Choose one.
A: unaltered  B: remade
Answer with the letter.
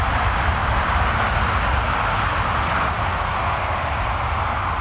A